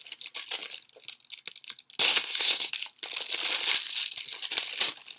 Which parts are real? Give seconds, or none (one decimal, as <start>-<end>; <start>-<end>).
0.0-2.1; 2.7-5.2